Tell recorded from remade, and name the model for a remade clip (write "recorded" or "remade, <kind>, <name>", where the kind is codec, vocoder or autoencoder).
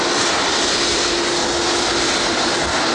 recorded